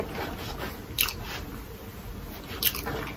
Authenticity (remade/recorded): recorded